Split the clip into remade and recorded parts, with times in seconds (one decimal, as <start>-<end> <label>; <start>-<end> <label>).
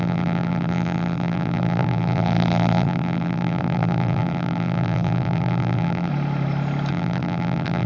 0.0-6.1 remade; 6.1-6.9 recorded; 6.9-7.9 remade